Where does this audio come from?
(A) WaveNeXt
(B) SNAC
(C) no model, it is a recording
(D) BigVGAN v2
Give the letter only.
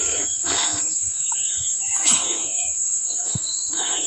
B